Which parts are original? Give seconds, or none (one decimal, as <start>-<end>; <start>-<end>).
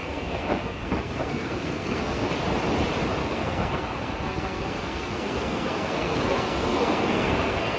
2.3-3.2